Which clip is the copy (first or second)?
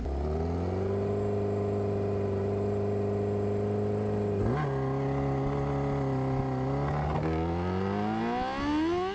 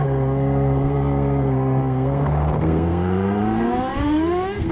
second